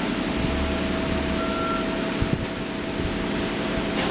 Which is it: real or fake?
real